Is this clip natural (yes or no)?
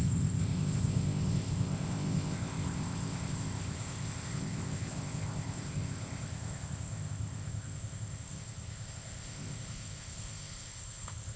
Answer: no